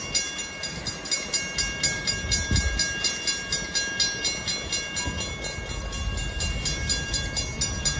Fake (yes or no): no